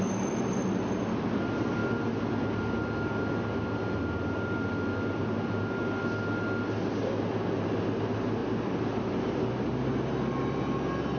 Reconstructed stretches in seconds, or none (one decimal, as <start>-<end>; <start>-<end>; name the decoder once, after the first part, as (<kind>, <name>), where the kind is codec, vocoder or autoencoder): 8.4-9.8 (vocoder, BigVGAN v2)